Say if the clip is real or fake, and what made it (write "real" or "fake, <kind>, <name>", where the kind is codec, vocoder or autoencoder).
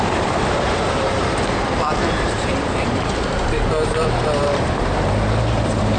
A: fake, vocoder, BigVGAN v2